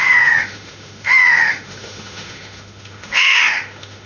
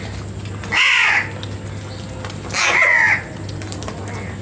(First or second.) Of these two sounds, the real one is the second